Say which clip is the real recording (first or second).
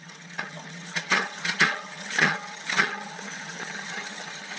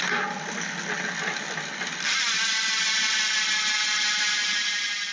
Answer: second